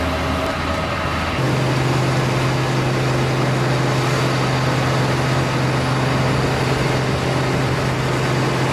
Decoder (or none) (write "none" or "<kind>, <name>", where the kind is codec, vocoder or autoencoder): none